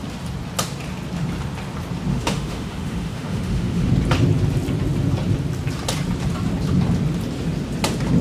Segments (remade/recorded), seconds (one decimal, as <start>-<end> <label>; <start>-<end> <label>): 0.0-2.1 recorded; 2.1-3.9 remade; 3.9-8.2 recorded